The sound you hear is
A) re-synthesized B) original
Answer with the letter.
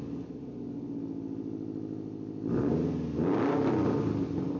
B